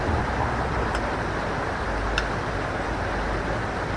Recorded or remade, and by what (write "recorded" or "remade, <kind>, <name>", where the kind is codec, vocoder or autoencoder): recorded